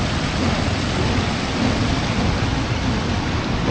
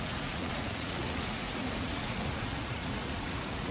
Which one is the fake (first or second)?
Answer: second